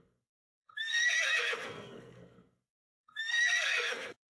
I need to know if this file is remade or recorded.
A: remade